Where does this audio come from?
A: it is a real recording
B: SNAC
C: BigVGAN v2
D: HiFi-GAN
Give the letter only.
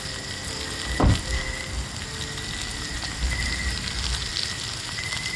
A